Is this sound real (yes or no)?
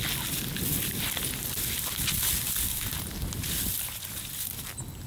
yes